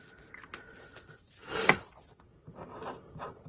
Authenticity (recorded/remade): recorded